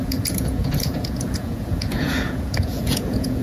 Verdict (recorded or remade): remade